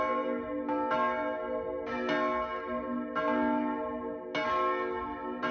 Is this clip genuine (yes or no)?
yes